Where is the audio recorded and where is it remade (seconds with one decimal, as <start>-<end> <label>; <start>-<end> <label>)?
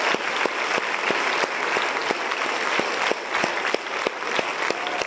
0.0-5.1 recorded